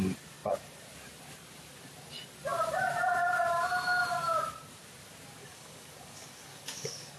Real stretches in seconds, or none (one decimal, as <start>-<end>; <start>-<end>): 0.0-5.4